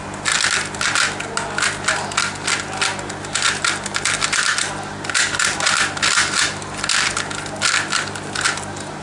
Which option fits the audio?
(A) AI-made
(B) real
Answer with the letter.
B